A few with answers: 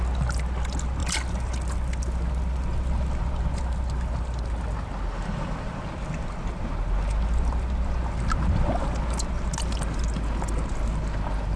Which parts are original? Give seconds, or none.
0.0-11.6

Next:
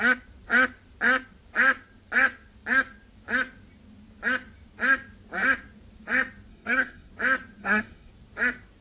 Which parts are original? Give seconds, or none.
0.0-6.5; 7.1-7.6; 8.1-8.8

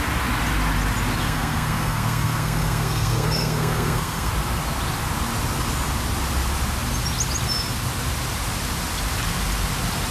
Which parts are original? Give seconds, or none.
0.0-1.2; 4.3-10.1

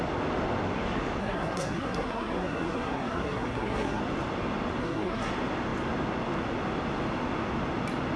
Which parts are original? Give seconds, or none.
0.0-1.2; 4.0-4.8; 5.3-8.2

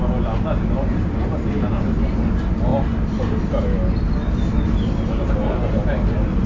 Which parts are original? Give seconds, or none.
0.0-6.5

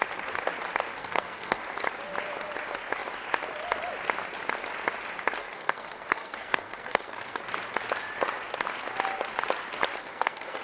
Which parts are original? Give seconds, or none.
0.0-1.0; 1.6-5.4; 7.4-10.0